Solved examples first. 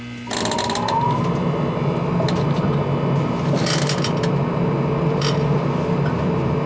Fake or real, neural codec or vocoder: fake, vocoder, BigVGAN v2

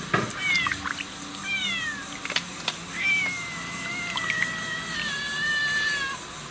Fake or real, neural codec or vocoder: real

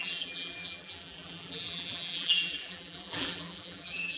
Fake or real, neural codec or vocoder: fake, vocoder, BigVGAN v2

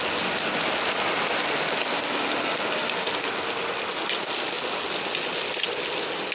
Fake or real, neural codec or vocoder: real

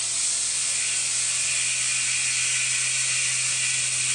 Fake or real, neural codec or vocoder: real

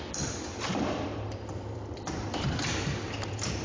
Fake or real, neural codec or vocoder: fake, vocoder, BigVGAN v2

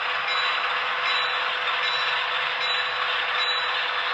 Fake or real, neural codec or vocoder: real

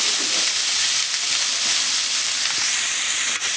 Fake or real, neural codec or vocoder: real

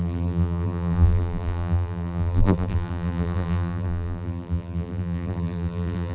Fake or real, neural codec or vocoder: fake, vocoder, BigVGAN v2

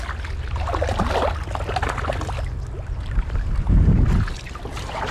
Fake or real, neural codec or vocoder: real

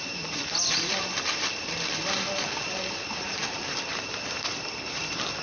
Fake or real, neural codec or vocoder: fake, vocoder, BigVGAN v2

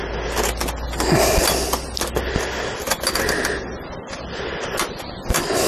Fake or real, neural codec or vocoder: real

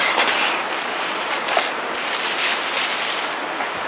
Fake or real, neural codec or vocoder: real